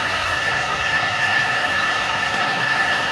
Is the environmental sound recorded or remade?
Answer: remade